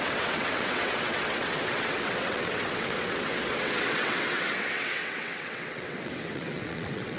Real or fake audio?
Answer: fake